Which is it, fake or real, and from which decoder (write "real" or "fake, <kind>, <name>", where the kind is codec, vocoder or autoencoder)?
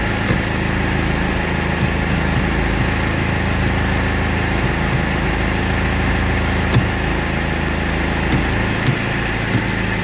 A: real